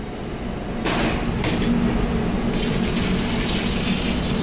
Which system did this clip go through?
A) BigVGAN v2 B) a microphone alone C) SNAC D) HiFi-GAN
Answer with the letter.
B